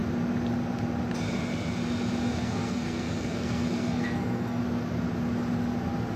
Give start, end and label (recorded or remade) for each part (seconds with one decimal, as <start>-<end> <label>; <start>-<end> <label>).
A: 0.0-2.3 recorded; 2.3-4.6 remade; 4.6-6.2 recorded